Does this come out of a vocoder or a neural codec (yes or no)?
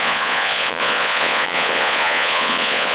yes